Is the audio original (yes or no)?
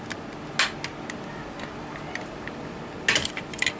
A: yes